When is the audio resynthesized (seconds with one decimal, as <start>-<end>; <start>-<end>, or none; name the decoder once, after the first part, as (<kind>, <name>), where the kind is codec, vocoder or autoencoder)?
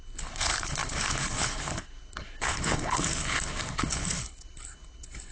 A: 0.0-5.3 (codec, HILCodec)